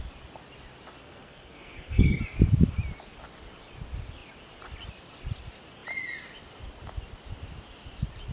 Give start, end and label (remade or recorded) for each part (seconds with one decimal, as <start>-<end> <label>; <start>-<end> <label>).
0.0-1.0 recorded; 1.0-2.2 remade; 2.2-8.3 recorded

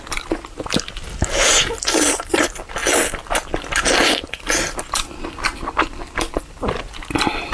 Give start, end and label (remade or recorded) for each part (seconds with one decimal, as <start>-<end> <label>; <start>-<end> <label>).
0.0-7.5 recorded